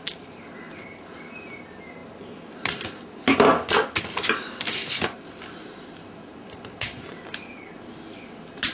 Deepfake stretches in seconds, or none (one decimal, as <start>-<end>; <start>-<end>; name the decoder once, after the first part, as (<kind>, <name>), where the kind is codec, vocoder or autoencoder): none